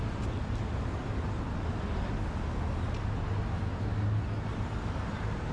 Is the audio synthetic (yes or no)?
no